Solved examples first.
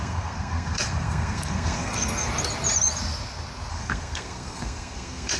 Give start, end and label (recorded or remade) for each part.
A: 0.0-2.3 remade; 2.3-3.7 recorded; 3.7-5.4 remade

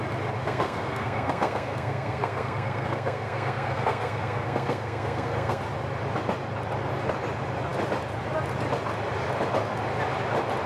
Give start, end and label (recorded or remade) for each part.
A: 0.0-0.4 recorded; 0.4-5.6 remade; 5.6-10.7 recorded

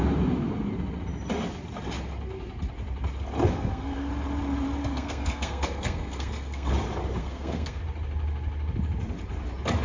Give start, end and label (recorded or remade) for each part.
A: 0.0-3.4 recorded; 3.4-4.1 remade; 4.1-4.8 recorded; 4.8-6.7 remade; 6.7-7.2 recorded; 7.2-7.8 remade; 7.8-9.8 recorded

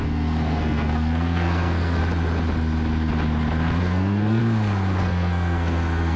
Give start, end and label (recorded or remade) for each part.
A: 0.0-2.0 remade; 2.0-3.8 recorded; 3.8-4.4 remade; 4.4-5.0 recorded; 5.0-6.2 remade

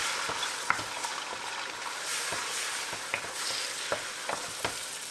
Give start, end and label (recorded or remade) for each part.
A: 0.0-5.1 recorded